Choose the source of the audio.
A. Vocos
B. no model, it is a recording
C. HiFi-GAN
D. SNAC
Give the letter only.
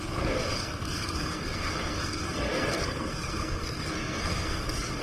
D